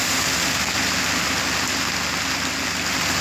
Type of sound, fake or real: real